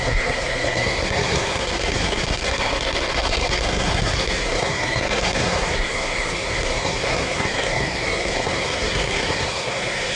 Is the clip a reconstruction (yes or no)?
yes